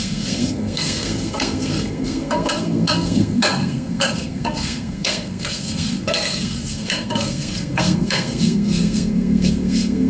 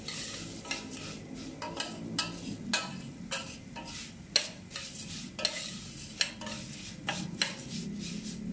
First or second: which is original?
second